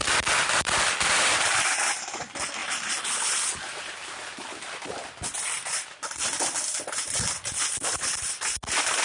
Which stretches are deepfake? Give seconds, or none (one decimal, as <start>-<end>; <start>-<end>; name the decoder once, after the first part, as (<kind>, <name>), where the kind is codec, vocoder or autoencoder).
0.0-1.5 (vocoder, BigVGAN v2)